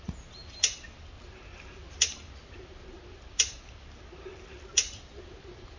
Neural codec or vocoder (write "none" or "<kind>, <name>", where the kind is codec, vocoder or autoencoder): none